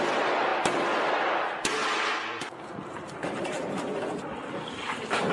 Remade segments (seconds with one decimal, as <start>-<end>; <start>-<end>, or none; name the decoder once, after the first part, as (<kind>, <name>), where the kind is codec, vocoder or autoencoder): 0.0-0.5 (vocoder, BigVGAN v2); 3.7-5.3